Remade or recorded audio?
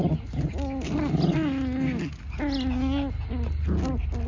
recorded